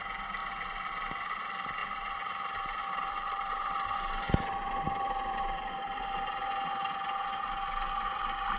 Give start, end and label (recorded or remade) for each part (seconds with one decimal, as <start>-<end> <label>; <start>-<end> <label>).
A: 0.0-1.8 recorded; 1.8-6.0 remade; 6.0-8.6 recorded